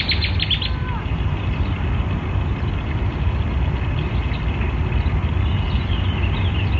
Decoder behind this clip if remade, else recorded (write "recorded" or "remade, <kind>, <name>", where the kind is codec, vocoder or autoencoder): recorded